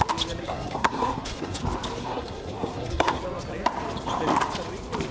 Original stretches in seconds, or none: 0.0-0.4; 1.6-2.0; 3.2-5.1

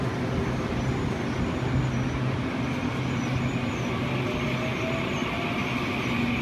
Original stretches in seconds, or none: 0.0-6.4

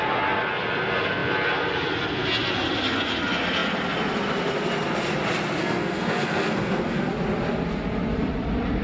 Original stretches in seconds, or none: 0.0-5.6; 7.1-8.8

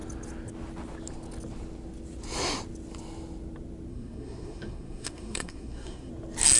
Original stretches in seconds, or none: 0.0-3.9; 6.1-6.6

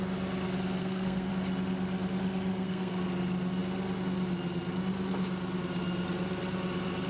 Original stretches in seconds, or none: 0.0-0.8; 1.3-2.5; 3.0-7.1

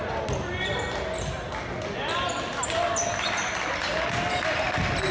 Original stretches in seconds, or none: 0.0-5.1